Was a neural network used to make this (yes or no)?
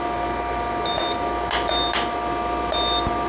no